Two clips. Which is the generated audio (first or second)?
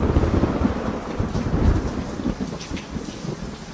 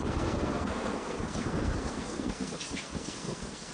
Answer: second